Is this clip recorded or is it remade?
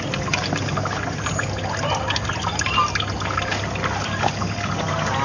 recorded